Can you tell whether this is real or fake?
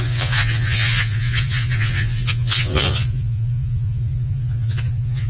fake